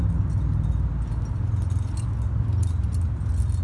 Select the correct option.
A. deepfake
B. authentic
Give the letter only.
B